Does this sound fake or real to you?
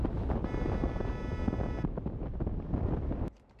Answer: real